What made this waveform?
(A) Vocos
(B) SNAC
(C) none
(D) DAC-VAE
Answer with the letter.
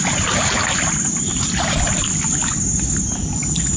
C